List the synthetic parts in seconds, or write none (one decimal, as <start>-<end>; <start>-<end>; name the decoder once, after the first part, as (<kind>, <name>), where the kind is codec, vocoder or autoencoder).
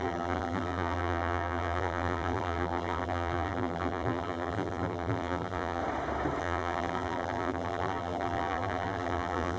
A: 0.0-5.8 (vocoder, BigVGAN v2); 6.4-9.6